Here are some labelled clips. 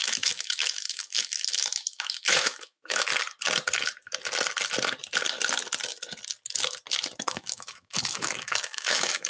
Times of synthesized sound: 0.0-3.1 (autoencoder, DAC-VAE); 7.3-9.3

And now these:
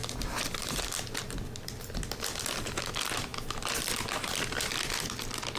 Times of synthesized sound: none

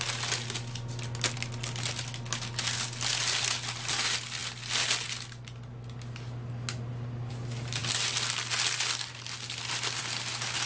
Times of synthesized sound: none

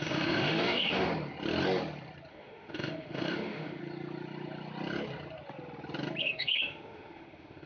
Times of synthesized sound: 0.0-1.1 (autoencoder, DAC-VAE); 2.3-3.8; 6.2-7.7

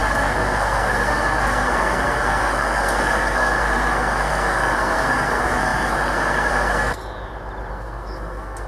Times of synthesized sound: 0.0-7.0 (codec, SNAC); 7.7-8.7

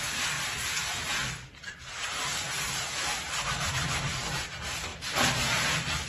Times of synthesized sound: 0.0-3.7 (vocoder, BigVGAN v2); 4.9-6.1

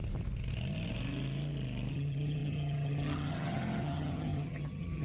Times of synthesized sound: 1.9-5.0 (vocoder, HiFi-GAN)

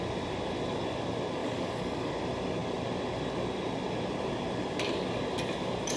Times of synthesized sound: 1.4-2.1 (codec, DAC)